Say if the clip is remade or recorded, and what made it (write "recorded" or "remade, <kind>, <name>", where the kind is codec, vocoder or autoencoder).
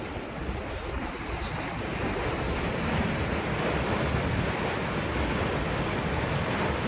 recorded